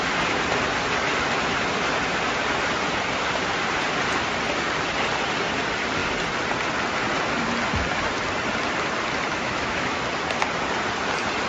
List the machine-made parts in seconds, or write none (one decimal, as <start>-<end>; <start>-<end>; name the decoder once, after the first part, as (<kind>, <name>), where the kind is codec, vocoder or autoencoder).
9.3-10.0 (autoencoder, DAC-VAE)